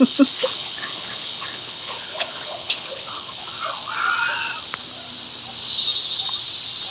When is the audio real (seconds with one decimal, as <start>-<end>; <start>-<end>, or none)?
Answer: 0.0-0.4; 3.5-6.9

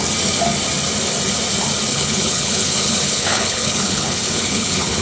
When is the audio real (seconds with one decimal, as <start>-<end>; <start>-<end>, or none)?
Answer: 0.0-1.9

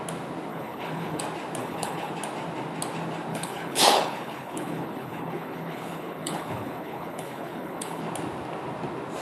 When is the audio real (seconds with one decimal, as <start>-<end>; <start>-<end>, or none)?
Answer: 0.0-0.5; 1.2-1.6; 2.1-3.3; 8.0-9.2